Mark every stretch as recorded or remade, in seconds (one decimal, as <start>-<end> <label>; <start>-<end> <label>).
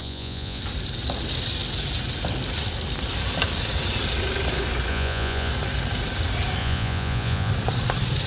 0.0-0.6 remade; 0.6-4.9 recorded; 4.9-5.5 remade; 5.5-6.6 recorded; 6.6-7.5 remade; 7.5-8.3 recorded